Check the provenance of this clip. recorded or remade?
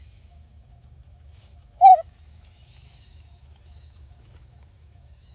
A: remade